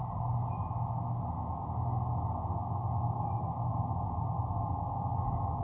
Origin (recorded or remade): recorded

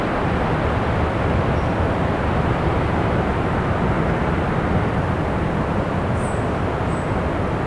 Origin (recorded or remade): recorded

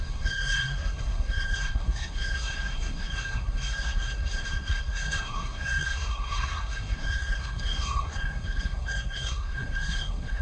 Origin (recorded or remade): remade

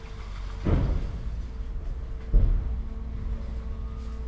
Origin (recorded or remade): recorded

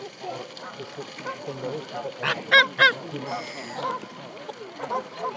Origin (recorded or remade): remade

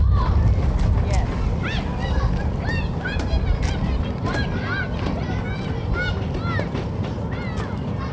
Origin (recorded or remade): recorded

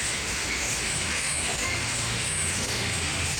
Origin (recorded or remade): remade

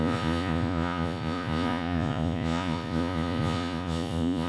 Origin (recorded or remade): remade